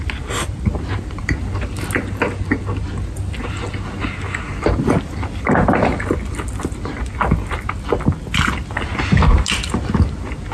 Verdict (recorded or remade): recorded